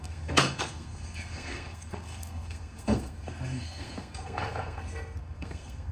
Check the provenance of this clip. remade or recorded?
remade